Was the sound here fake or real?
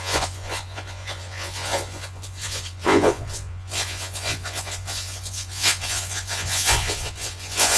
fake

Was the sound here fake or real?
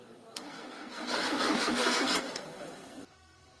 fake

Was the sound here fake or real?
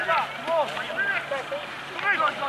real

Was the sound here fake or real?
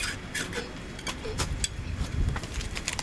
real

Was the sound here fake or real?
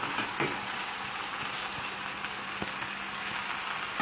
real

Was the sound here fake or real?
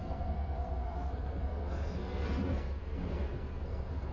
fake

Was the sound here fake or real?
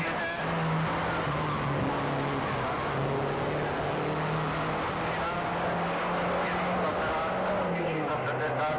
real